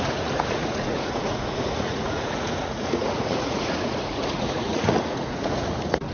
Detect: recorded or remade remade